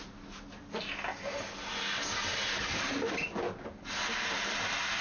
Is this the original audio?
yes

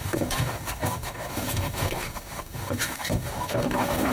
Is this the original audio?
no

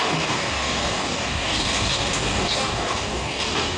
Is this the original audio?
no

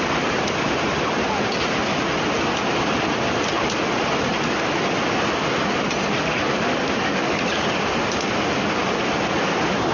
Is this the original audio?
yes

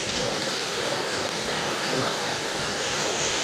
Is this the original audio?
no